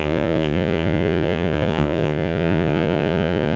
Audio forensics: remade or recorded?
remade